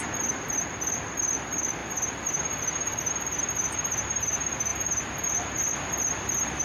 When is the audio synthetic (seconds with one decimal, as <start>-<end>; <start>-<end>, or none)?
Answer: 0.0-1.8; 3.4-4.7; 5.5-6.6